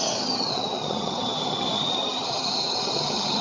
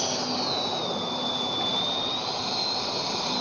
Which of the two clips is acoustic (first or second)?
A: second